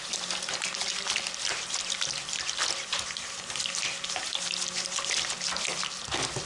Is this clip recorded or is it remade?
recorded